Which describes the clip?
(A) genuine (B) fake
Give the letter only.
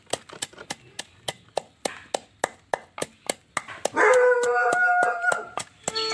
A